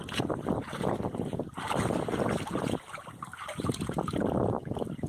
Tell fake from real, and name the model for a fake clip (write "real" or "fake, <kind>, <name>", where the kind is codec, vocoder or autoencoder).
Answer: real